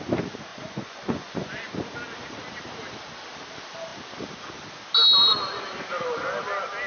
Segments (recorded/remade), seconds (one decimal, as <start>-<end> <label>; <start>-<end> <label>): 0.0-0.5 recorded; 0.5-1.7 remade; 1.7-6.9 recorded